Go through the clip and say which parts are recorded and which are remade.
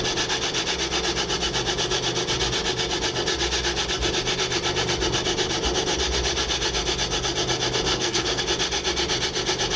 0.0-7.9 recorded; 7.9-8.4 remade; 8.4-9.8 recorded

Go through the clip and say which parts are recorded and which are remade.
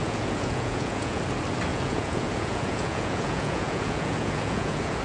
0.0-1.2 remade; 1.2-1.7 recorded; 1.7-5.0 remade